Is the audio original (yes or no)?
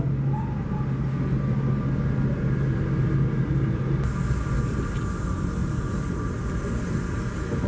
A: yes